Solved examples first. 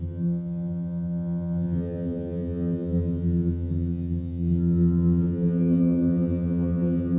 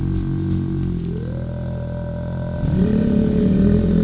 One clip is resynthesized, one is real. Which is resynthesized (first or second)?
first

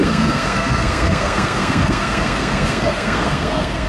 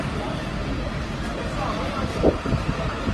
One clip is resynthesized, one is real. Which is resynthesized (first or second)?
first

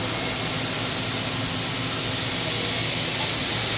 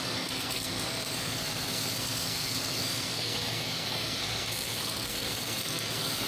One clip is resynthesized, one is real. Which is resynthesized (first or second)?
second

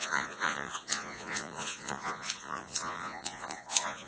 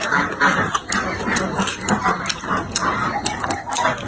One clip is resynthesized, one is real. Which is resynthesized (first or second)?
first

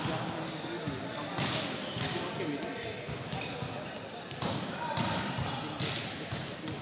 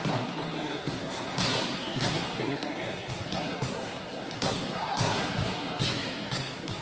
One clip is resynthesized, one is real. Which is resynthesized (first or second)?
second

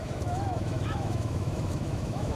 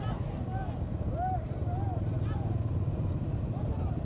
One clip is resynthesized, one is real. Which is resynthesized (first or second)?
first